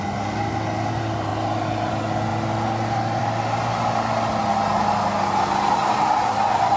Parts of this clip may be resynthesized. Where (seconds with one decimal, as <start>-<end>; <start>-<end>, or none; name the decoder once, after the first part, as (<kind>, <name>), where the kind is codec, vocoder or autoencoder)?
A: none